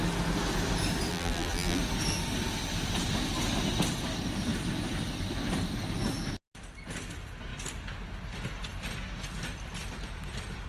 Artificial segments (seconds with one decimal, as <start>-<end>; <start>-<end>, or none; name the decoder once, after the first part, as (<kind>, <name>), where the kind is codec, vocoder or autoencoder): 1.1-1.8 (vocoder, BigVGAN v2)